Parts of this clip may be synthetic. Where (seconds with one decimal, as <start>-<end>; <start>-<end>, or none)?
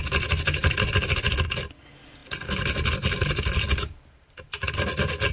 none